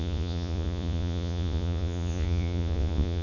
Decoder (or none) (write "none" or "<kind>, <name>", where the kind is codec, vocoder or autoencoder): vocoder, Vocos